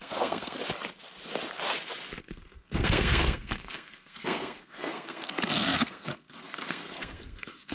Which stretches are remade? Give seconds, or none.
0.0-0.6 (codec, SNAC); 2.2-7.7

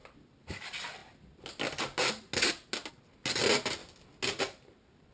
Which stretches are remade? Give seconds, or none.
0.0-0.6 (vocoder, BigVGAN v2)

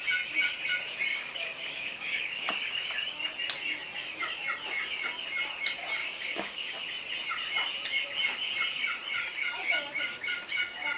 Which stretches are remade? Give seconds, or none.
1.1-3.3 (codec, DAC); 6.0-6.7; 9.4-10.4

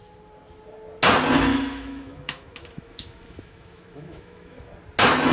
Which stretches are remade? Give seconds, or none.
1.5-4.7 (autoencoder, DAC-VAE)

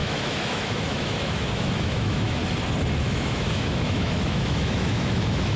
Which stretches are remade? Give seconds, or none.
0.0-2.4 (autoencoder, DAC-VAE); 3.0-5.6